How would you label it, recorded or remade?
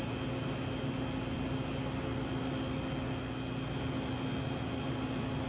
recorded